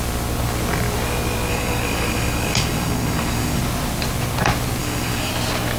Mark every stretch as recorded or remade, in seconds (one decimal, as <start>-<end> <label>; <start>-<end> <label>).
0.0-1.5 recorded; 1.5-3.6 remade; 3.6-4.8 recorded; 4.8-5.3 remade; 5.3-5.8 recorded